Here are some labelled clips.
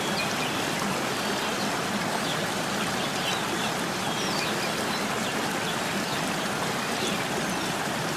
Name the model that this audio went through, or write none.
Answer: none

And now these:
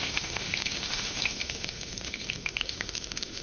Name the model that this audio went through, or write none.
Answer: autoencoder, DAC-VAE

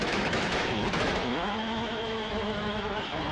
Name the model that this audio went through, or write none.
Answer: autoencoder, DAC-VAE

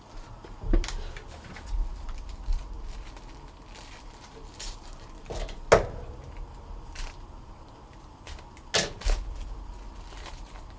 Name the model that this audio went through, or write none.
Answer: none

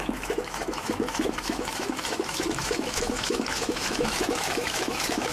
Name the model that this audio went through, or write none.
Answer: autoencoder, DAC-VAE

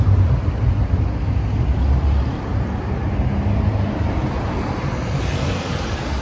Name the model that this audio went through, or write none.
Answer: none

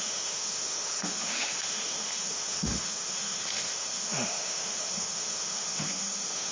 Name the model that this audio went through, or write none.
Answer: autoencoder, DAC-VAE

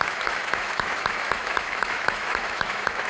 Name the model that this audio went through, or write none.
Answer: autoencoder, DAC-VAE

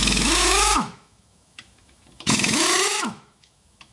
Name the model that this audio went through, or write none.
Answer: autoencoder, DAC-VAE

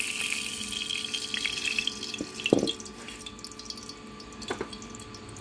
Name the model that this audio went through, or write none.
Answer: none